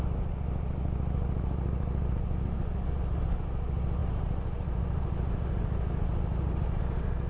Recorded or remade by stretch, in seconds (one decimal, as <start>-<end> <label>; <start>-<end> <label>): 0.0-4.0 recorded; 4.0-6.8 remade; 6.8-7.3 recorded